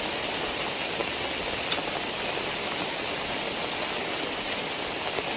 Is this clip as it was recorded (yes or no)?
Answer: yes